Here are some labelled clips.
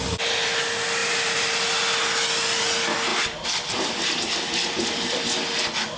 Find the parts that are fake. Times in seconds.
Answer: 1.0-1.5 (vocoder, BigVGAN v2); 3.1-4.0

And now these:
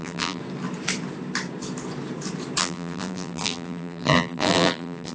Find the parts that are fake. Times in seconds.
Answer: 0.0-0.4 (vocoder, BigVGAN v2); 2.6-5.1

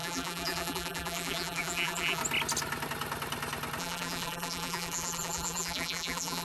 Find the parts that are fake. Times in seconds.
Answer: 0.0-2.2 (vocoder, BigVGAN v2); 3.8-6.4